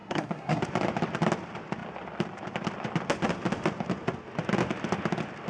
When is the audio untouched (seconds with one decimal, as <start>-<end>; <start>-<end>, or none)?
0.6-5.5